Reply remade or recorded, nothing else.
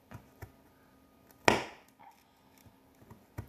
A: recorded